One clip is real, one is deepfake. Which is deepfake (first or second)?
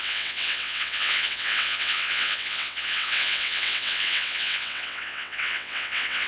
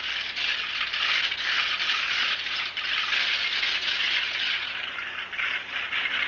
first